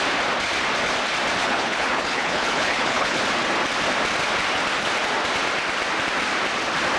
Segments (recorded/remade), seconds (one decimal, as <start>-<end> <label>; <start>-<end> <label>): 0.0-1.4 recorded; 1.4-3.2 remade; 3.2-7.0 recorded